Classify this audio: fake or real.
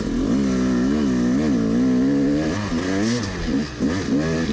real